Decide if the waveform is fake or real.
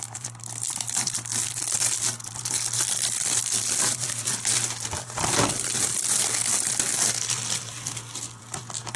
fake